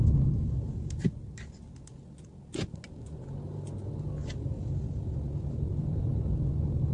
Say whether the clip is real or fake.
real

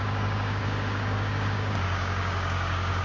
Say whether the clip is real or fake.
fake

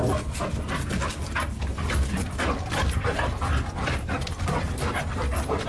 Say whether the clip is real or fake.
real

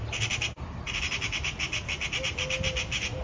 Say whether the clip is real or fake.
real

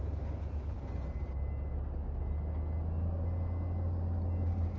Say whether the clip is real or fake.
real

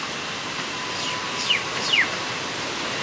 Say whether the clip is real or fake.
real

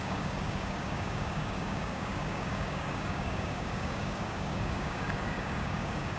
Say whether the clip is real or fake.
fake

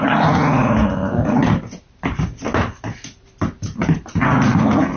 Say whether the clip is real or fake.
real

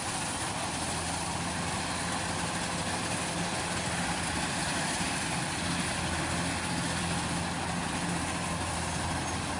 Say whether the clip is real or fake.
real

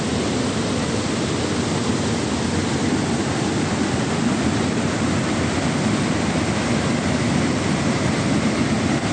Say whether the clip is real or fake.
real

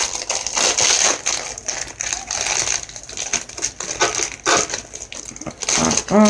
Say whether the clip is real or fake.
real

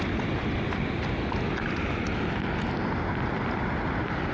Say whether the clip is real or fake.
real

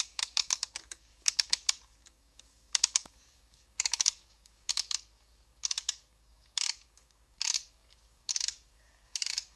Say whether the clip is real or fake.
fake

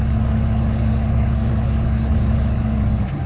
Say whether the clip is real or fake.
fake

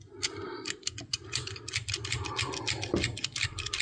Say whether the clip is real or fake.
real